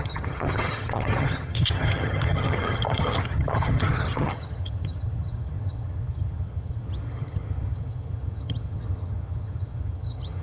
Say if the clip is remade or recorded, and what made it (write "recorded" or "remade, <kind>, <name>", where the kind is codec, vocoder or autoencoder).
remade, vocoder, HiFi-GAN